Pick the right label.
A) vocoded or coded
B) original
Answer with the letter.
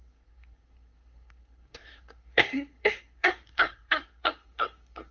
A